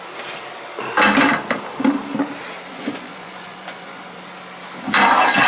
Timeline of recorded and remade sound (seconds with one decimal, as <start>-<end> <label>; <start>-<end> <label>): 0.0-2.7 recorded; 2.7-4.0 remade; 4.0-5.5 recorded